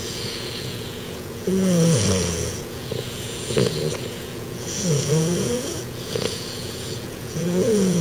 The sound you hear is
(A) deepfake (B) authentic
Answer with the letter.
A